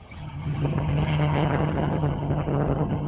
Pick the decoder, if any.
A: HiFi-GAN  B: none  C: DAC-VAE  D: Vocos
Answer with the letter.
A